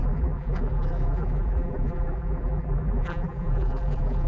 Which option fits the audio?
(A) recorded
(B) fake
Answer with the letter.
B